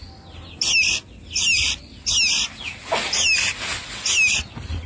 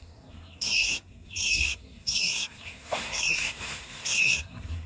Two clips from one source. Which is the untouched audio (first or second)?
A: first